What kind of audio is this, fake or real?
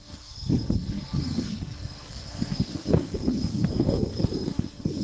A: fake